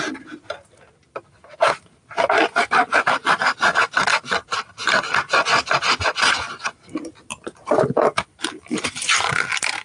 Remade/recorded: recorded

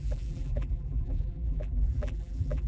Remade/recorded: remade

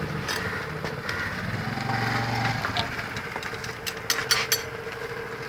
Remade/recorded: recorded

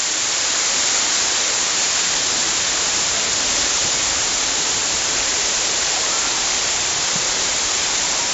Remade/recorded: remade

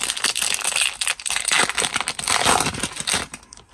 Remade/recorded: recorded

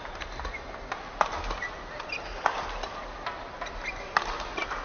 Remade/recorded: recorded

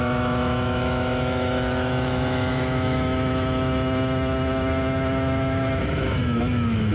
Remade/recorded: remade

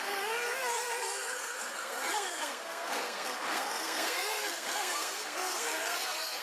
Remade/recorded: remade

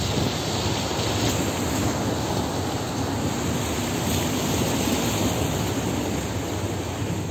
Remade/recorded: recorded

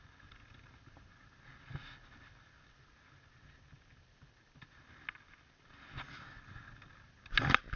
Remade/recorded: recorded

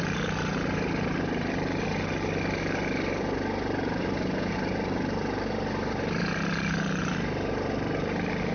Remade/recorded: recorded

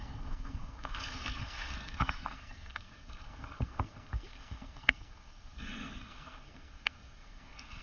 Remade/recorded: remade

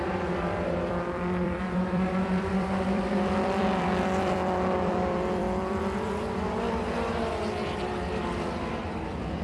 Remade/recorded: remade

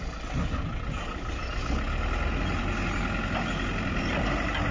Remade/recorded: recorded